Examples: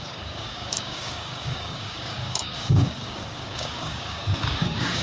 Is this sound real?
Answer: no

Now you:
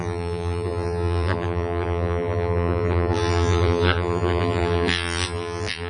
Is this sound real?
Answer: no